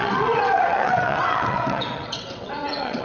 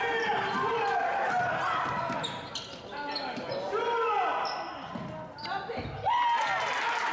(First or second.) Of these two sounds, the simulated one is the first